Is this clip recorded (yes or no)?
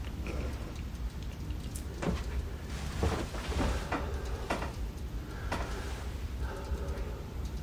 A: no